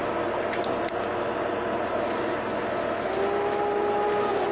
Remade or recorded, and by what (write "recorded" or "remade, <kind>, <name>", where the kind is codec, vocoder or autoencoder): recorded